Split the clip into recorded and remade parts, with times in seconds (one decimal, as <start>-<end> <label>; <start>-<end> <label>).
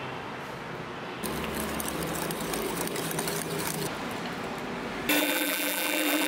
0.0-5.2 recorded; 5.2-6.3 remade